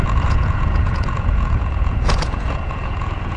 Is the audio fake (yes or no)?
yes